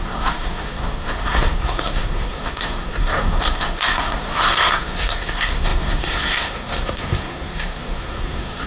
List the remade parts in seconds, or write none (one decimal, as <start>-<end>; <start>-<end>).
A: 0.0-8.7